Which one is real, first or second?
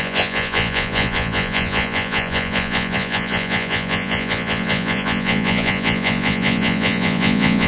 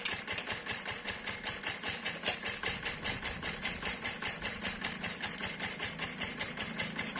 second